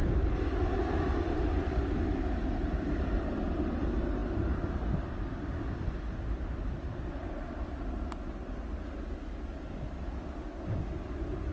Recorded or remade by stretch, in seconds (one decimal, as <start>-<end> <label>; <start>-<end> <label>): 0.0-11.5 recorded